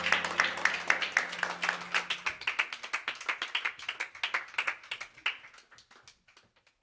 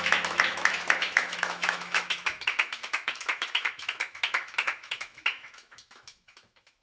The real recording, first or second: first